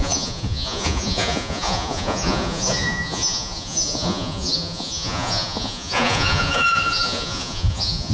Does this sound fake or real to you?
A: fake